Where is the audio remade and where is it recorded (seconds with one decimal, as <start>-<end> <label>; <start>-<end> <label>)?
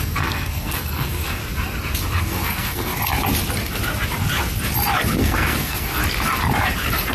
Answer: 0.0-1.4 remade; 1.4-2.2 recorded; 2.2-2.9 remade; 2.9-5.2 recorded; 5.2-6.0 remade; 6.0-7.1 recorded